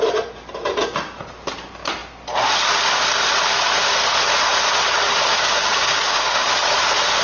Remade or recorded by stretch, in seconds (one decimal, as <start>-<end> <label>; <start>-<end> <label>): 0.0-5.3 recorded; 5.3-6.5 remade; 6.5-7.2 recorded